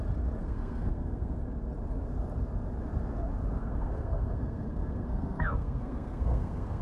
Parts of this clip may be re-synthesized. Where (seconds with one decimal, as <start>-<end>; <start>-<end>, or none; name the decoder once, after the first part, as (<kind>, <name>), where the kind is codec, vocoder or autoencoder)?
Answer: 0.4-1.4 (codec, SNAC); 3.6-6.8